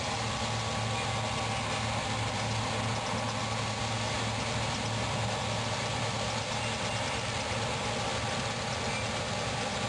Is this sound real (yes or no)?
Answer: yes